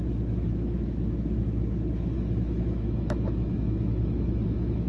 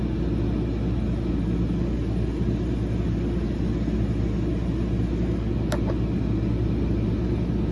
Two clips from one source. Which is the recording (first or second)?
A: second